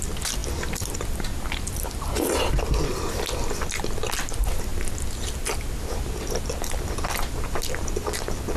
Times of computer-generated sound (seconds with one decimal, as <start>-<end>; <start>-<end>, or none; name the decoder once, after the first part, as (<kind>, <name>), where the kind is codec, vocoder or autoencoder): none

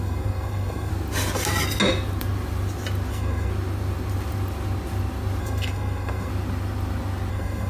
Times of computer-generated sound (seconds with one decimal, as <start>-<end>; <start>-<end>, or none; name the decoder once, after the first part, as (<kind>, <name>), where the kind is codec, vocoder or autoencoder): 0.0-0.9 (codec, SNAC); 3.1-3.5; 5.4-6.3; 7.3-7.7